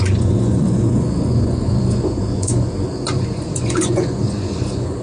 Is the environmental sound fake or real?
fake